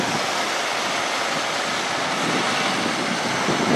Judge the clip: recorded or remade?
recorded